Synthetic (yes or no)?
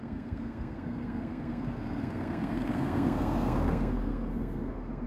yes